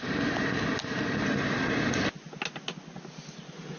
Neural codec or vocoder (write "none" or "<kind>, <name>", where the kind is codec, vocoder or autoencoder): none